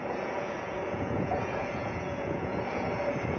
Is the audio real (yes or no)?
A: no